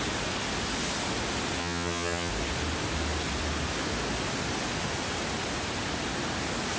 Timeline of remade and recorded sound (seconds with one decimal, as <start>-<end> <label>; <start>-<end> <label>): 0.0-1.6 recorded; 1.6-2.3 remade; 2.3-6.8 recorded